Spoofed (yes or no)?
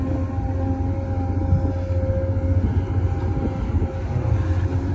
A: no